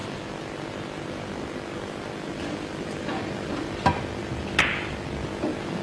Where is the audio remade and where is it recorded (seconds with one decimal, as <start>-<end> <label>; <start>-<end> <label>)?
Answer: 0.0-5.8 recorded